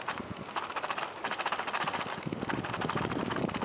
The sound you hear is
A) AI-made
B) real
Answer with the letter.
B